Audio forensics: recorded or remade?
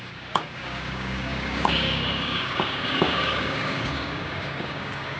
remade